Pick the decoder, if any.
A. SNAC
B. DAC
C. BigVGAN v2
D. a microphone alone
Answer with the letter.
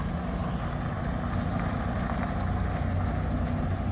D